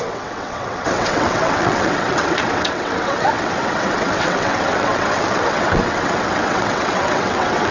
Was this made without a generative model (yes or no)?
no